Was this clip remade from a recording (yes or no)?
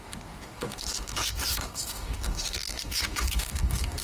yes